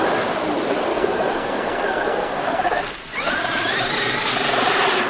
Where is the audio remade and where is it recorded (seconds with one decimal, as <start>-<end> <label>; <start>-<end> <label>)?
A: 0.0-0.9 recorded; 0.9-2.8 remade; 2.8-5.1 recorded